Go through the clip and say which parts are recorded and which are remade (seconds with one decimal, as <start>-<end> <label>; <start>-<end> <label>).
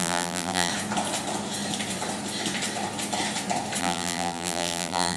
0.0-0.7 remade; 0.7-3.8 recorded; 3.8-5.2 remade